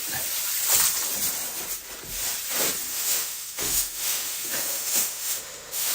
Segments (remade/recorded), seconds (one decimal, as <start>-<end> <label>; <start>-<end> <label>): 0.0-2.9 recorded; 2.9-5.9 remade